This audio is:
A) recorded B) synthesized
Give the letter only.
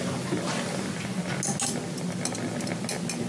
A